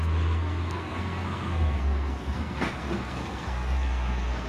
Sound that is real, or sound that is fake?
fake